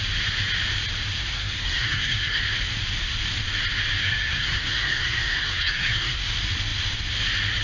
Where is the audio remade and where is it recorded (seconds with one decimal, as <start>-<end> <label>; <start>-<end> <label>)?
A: 0.0-1.3 recorded; 1.3-2.4 remade; 2.4-4.0 recorded; 4.0-6.2 remade; 6.2-7.6 recorded

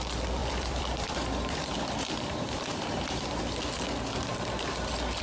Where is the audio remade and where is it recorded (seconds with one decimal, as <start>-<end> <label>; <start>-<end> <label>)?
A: 0.0-0.4 recorded; 0.4-3.4 remade; 3.4-5.2 recorded

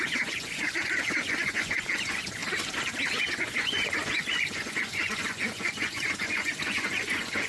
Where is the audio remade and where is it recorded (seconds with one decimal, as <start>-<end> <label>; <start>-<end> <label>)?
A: 0.0-2.4 remade; 2.4-3.1 recorded; 3.1-7.5 remade

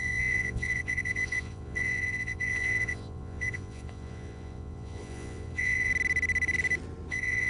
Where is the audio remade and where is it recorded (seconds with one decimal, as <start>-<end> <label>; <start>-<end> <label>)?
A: 0.0-5.9 remade; 5.9-7.1 recorded; 7.1-7.5 remade

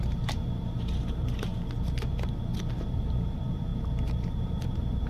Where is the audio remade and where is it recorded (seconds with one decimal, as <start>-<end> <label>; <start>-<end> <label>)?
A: 0.0-1.5 remade; 1.5-2.7 recorded; 2.7-5.1 remade